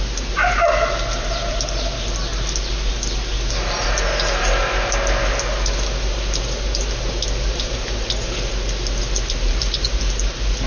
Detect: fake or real real